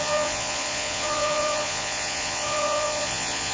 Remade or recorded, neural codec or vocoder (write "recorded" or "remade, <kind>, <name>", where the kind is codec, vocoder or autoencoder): remade, vocoder, Vocos